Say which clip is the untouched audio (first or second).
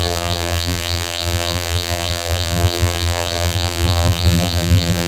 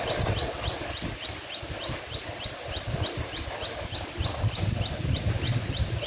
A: second